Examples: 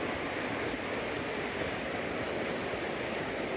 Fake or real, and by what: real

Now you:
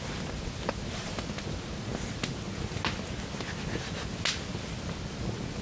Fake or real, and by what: real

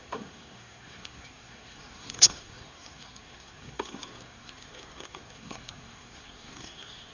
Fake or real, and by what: fake, codec, SNAC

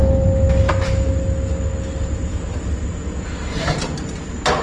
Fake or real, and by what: real